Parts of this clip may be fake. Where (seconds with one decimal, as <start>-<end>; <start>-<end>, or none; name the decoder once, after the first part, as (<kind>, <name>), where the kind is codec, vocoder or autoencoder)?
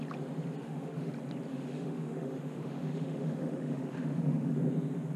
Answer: 0.6-1.1 (autoencoder, DAC-VAE); 1.5-4.6